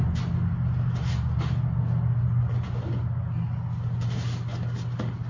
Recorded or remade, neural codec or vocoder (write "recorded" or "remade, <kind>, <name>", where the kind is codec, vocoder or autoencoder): recorded